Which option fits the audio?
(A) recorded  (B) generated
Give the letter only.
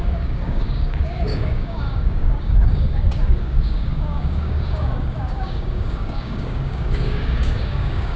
B